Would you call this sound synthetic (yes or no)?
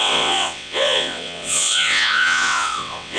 yes